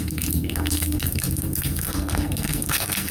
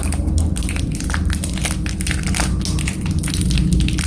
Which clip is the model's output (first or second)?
first